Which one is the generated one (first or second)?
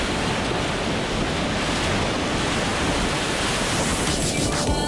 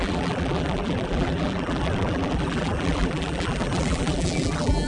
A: second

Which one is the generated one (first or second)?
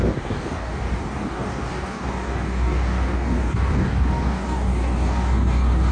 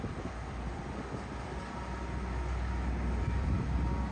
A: first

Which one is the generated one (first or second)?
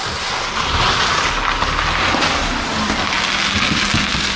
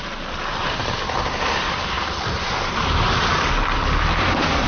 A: second